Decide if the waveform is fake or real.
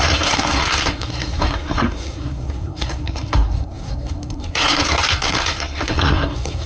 fake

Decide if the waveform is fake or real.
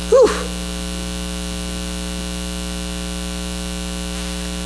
real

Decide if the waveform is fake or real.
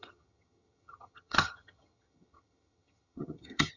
fake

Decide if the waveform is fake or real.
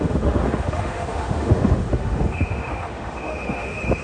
fake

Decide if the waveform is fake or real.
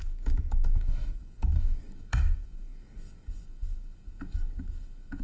fake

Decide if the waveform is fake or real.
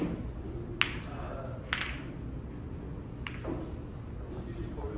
real